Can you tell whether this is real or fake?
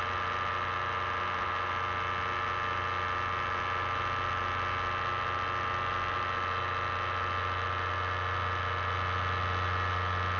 real